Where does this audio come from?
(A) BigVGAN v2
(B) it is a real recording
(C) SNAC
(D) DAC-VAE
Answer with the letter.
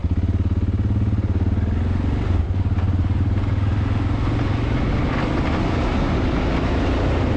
B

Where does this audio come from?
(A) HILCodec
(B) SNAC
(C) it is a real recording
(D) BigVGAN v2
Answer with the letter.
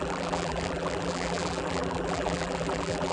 D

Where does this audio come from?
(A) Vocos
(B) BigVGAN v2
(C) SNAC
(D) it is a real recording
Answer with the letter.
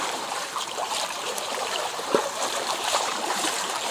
B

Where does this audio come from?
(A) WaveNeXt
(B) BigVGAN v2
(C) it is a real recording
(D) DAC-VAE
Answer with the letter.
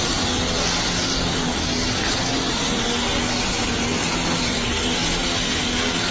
C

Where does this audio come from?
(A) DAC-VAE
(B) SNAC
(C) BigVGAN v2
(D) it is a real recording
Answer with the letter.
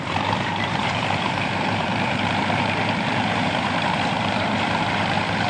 C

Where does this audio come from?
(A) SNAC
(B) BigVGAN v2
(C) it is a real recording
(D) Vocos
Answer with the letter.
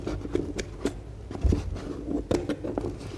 C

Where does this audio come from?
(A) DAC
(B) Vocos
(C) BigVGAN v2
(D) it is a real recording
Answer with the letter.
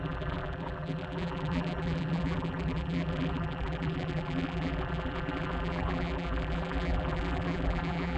C